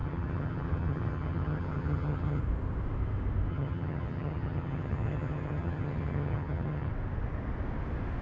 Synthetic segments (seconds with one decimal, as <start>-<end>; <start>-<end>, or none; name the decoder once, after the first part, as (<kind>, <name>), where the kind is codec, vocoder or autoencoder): 0.0-2.4 (vocoder, HiFi-GAN); 3.5-6.9